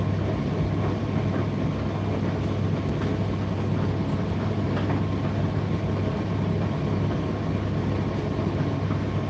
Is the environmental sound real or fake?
real